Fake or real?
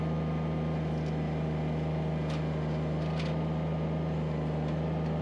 real